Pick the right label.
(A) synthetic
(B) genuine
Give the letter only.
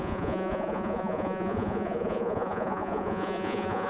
A